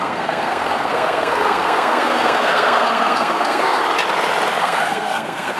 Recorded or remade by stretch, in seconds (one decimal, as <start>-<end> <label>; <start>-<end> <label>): 0.0-3.8 remade; 3.8-4.6 recorded; 4.6-5.6 remade

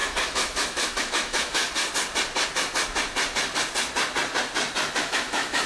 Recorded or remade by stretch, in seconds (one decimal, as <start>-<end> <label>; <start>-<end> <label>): 0.0-1.6 remade; 1.6-5.0 recorded; 5.0-5.7 remade

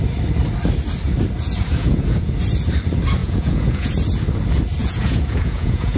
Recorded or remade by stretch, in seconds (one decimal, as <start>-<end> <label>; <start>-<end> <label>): 0.0-1.8 recorded; 1.8-2.3 remade; 2.3-3.2 recorded; 3.2-3.9 remade; 3.9-4.8 recorded; 4.8-6.0 remade

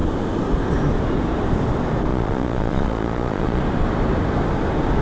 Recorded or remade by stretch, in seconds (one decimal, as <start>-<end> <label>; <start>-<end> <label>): 0.0-2.1 recorded; 2.1-3.6 remade; 3.6-5.0 recorded

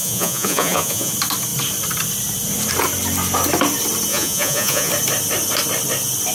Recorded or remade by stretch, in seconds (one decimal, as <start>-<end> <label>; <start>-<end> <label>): 0.0-1.1 remade; 1.1-4.1 recorded; 4.1-4.9 remade; 4.9-6.3 recorded

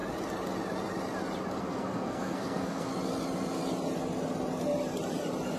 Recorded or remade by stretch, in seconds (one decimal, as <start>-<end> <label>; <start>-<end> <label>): 0.0-1.6 recorded; 1.6-2.9 remade; 2.9-5.6 recorded